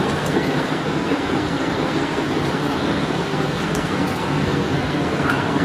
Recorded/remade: remade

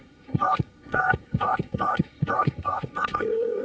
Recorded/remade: remade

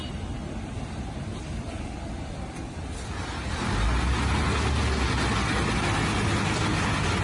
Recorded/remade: recorded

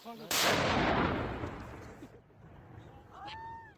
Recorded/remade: recorded